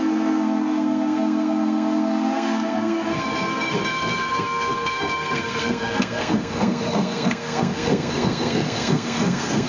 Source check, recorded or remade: remade